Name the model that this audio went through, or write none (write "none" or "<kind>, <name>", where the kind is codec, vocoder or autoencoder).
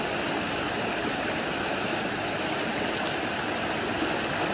none